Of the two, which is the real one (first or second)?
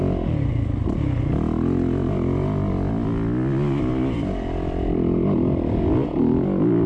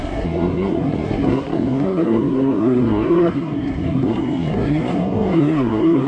first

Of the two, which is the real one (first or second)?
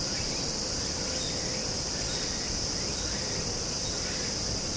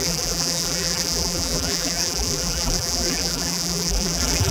first